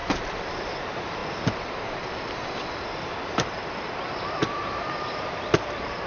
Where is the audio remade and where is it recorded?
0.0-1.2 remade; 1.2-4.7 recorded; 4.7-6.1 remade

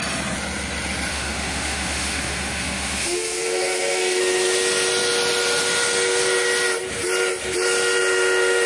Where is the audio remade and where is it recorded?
0.0-1.1 recorded; 1.1-4.2 remade; 4.2-8.7 recorded